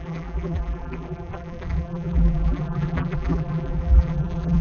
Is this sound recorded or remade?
remade